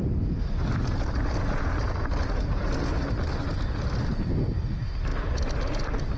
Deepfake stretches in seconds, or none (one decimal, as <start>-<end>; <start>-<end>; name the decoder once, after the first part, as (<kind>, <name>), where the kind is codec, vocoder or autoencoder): none